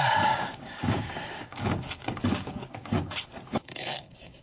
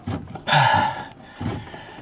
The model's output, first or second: first